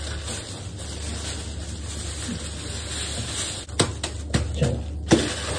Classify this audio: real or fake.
real